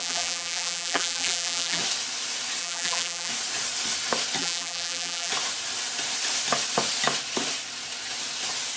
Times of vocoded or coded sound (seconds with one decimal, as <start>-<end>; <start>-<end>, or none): 0.0-1.8; 2.6-3.3; 4.4-5.3